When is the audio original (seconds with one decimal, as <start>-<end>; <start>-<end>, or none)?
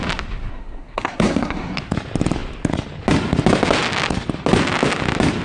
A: 0.0-0.5; 1.8-5.4